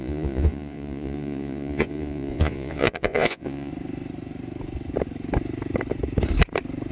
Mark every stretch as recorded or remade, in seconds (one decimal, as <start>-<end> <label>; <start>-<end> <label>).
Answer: 0.0-3.7 remade; 3.7-6.9 recorded